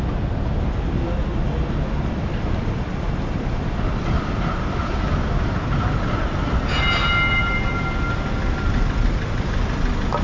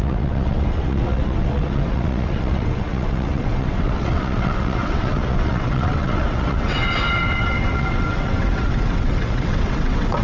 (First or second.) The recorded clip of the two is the first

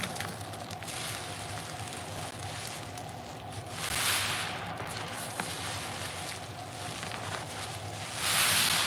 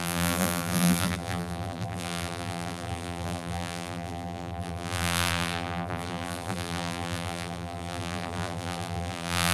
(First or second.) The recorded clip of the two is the first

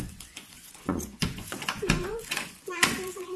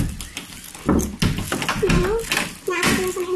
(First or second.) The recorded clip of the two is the second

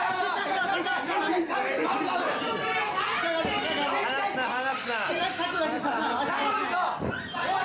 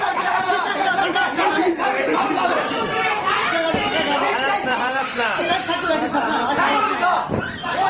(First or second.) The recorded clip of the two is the first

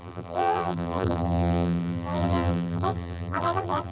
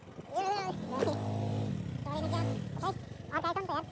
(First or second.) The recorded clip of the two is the second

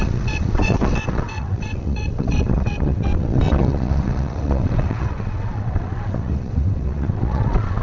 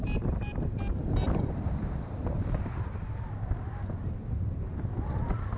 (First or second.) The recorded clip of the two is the second